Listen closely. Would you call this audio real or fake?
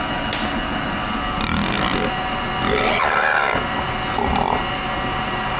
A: real